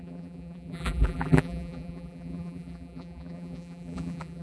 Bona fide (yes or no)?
no